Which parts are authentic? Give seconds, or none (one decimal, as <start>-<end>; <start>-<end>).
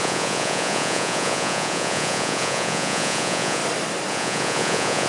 3.6-4.1